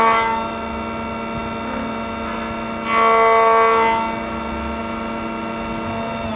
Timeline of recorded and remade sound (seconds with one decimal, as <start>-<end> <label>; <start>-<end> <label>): 0.0-6.4 recorded